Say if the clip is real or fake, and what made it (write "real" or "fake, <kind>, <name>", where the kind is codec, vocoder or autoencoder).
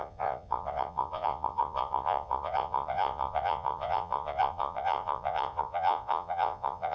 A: fake, vocoder, Vocos